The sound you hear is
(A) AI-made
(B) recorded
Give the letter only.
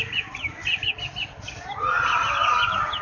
B